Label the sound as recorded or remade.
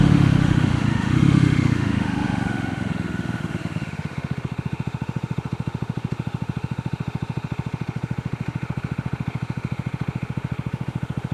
remade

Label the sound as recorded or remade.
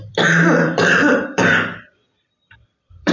remade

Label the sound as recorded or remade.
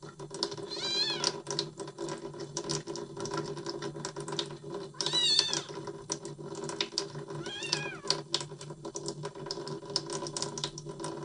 recorded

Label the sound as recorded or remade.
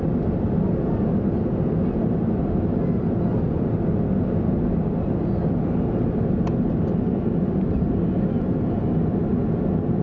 recorded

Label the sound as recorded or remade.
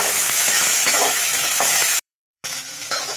remade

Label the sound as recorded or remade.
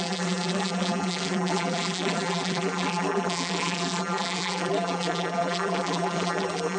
remade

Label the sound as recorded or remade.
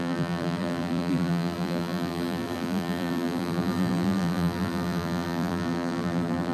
remade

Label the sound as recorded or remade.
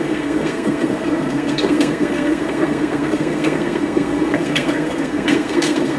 remade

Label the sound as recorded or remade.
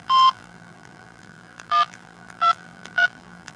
remade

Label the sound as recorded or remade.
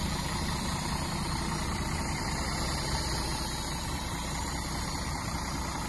remade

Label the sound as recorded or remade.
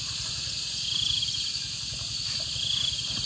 recorded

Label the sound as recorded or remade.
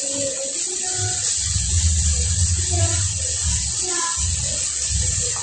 recorded